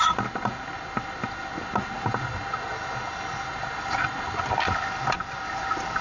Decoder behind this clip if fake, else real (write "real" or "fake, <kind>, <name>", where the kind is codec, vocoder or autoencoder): real